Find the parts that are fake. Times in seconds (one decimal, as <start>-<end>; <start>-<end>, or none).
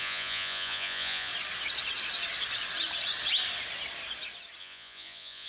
0.0-1.3; 4.6-5.5